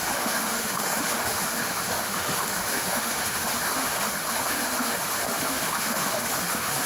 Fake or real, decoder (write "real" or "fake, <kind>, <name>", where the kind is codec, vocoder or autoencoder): fake, autoencoder, DAC-VAE